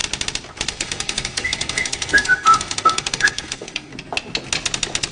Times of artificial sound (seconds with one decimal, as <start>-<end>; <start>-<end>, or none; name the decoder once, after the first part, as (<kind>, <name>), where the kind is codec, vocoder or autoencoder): 0.7-3.9 (codec, SNAC)